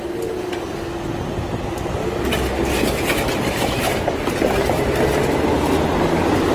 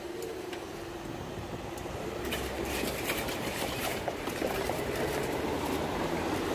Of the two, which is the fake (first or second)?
second